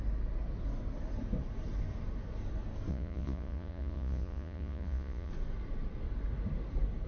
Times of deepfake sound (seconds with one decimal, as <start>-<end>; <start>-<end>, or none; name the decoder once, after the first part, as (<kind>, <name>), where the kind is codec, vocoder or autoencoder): 2.9-5.3 (vocoder, Vocos)